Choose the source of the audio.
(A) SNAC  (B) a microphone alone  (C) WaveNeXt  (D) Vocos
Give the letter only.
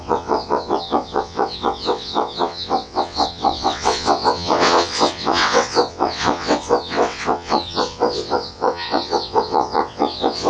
C